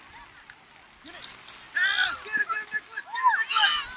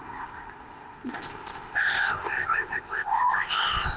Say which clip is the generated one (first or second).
second